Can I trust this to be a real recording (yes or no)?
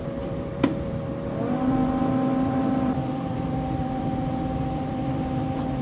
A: no